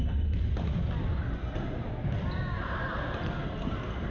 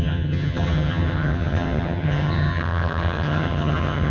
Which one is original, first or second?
first